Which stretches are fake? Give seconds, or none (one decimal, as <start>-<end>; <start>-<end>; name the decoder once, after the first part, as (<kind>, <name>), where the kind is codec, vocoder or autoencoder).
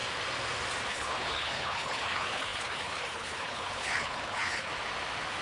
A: 0.9-4.7 (codec, HILCodec)